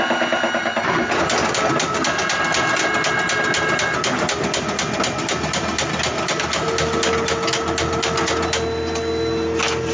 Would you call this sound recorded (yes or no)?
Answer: yes